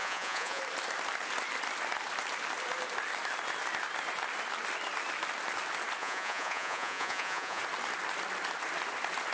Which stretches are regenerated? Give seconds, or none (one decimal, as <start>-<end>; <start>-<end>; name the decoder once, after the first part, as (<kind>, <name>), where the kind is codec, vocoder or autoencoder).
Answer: 0.0-0.6 (vocoder, Vocos); 6.0-7.6